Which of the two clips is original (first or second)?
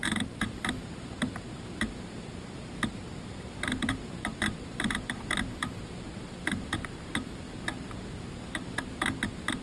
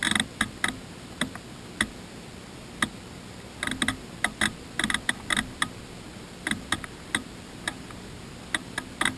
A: second